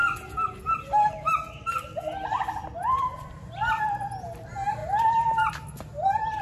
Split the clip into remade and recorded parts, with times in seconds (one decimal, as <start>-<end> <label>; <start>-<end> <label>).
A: 0.0-6.4 recorded